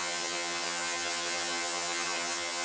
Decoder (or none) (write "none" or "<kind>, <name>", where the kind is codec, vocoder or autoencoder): vocoder, HiFi-GAN